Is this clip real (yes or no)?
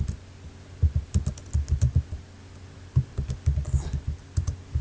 yes